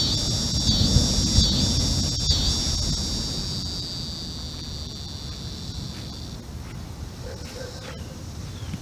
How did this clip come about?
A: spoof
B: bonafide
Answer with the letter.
B